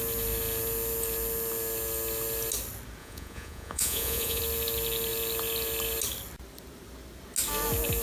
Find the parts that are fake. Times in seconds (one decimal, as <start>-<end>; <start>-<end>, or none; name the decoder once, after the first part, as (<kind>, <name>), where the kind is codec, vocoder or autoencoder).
3.0-4.4 (vocoder, Vocos)